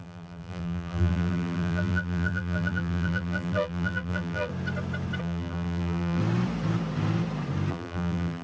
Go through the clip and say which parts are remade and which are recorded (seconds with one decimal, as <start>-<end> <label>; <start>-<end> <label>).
0.0-4.5 remade; 4.5-5.2 recorded; 5.2-6.2 remade; 6.2-7.7 recorded; 7.7-8.4 remade